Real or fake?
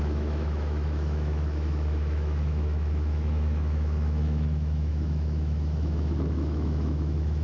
fake